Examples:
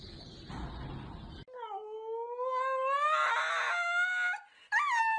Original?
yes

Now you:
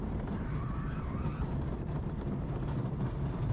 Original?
no